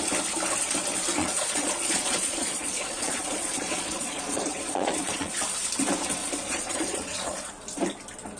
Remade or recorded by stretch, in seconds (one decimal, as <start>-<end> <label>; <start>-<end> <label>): 0.0-1.2 recorded; 1.2-5.3 remade; 5.3-6.2 recorded; 6.2-7.5 remade; 7.5-8.4 recorded